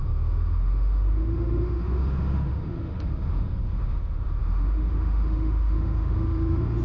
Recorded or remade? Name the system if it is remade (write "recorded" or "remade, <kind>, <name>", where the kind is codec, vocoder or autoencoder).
remade, autoencoder, DAC-VAE